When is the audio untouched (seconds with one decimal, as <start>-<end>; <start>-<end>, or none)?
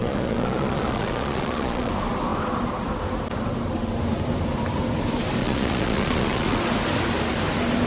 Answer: 1.9-5.4; 6.6-7.9